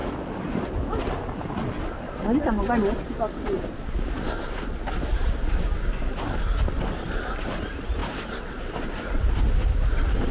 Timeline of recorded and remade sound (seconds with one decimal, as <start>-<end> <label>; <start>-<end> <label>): 0.0-5.0 recorded; 5.0-6.5 remade; 6.5-7.5 recorded; 7.5-10.3 remade